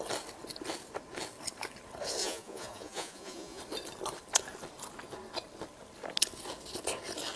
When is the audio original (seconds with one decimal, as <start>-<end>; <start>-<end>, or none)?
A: 0.0-2.2; 3.6-7.4